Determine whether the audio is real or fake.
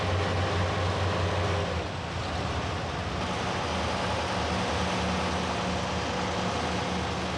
real